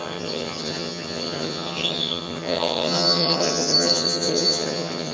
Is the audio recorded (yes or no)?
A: no